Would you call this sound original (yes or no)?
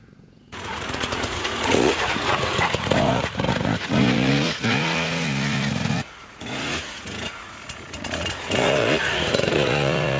no